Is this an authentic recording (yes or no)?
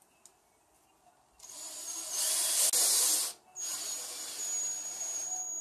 yes